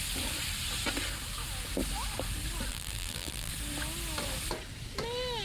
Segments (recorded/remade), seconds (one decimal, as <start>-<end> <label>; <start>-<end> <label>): 0.0-2.7 recorded; 2.7-3.5 remade; 3.5-5.4 recorded